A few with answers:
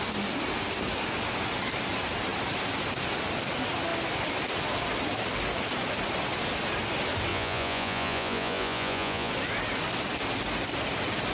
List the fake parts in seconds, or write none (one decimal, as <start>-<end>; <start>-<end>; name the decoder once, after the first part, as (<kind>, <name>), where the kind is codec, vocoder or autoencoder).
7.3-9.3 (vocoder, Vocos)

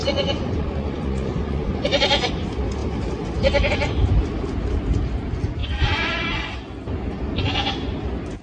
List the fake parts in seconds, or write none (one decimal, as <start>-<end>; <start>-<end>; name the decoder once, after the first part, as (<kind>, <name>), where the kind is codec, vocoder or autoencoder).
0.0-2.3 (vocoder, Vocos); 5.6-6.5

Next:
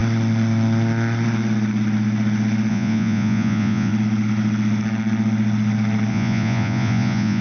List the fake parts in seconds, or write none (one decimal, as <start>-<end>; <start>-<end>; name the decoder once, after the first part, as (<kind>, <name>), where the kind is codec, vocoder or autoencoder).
2.7-3.9 (vocoder, Vocos); 6.1-7.4